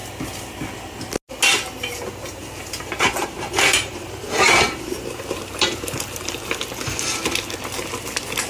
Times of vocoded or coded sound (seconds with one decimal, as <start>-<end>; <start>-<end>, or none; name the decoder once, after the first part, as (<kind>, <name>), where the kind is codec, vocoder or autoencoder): 2.4-6.5 (vocoder, BigVGAN v2)